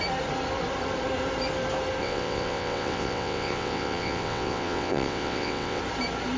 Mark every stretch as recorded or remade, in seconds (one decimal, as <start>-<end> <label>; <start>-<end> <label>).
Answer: 0.0-2.0 recorded; 2.0-5.8 remade; 5.8-6.4 recorded